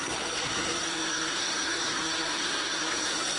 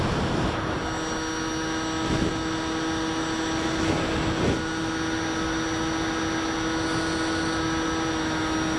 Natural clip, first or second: second